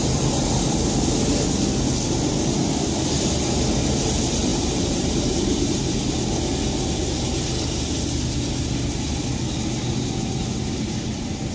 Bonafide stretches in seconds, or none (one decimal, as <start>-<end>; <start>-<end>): 0.0-4.5; 6.1-11.5